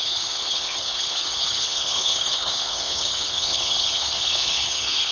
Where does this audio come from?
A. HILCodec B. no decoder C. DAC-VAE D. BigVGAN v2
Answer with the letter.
A